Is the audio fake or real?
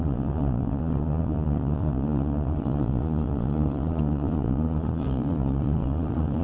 fake